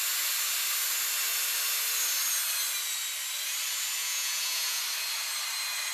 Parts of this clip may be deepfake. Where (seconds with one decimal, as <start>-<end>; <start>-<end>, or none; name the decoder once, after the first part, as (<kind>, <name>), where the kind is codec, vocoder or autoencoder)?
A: 4.0-4.8 (vocoder, Vocos)